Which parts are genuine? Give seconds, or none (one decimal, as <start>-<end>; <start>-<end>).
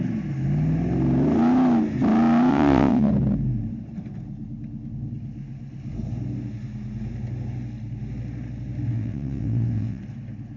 0.0-2.5; 3.1-8.9; 10.0-10.6